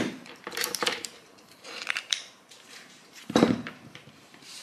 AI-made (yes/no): yes